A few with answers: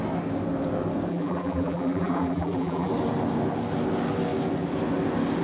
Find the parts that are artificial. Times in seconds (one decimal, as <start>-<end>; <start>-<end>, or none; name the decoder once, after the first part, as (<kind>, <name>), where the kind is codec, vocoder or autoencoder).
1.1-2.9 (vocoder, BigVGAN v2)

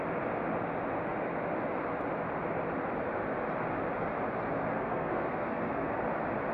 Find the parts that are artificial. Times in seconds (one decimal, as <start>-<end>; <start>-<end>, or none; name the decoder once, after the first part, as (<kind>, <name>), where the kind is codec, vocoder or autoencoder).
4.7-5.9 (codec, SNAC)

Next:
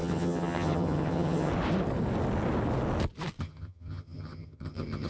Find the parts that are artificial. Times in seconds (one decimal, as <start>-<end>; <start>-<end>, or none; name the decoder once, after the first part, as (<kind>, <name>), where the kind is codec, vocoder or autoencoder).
0.0-1.5 (vocoder, HiFi-GAN); 3.4-5.1

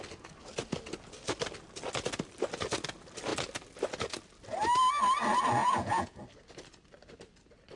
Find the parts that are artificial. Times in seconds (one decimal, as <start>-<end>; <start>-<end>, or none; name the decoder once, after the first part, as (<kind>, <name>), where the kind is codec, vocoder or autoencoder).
5.6-6.2 (vocoder, Vocos)